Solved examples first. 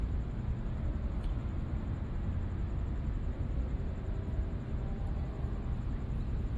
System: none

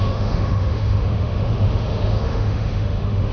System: autoencoder, DAC-VAE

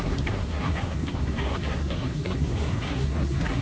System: codec, SNAC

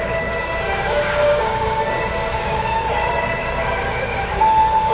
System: codec, DAC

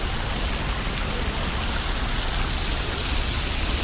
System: none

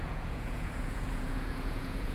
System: vocoder, Vocos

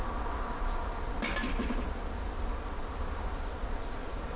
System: none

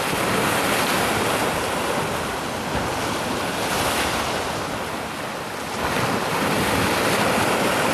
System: none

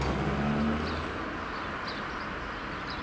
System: none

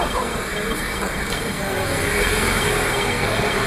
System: codec, SNAC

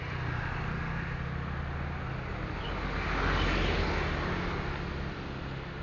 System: none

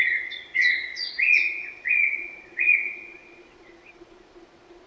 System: vocoder, Vocos